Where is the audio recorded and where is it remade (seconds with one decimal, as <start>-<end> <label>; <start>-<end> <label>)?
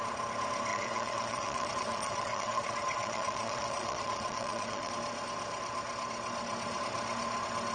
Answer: 0.0-0.7 recorded; 0.7-4.9 remade; 4.9-7.7 recorded